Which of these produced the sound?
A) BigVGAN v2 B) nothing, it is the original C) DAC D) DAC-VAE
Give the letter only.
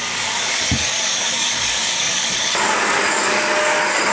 C